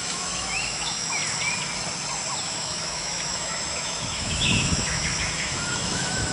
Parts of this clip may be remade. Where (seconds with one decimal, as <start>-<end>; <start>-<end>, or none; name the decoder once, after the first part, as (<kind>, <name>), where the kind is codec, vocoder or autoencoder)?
0.0-1.2 (autoencoder, DAC-VAE); 2.4-6.3